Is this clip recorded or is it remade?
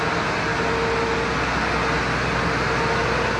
recorded